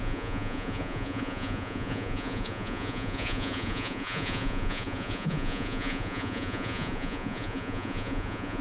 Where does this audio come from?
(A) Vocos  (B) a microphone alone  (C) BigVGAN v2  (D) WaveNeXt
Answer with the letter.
A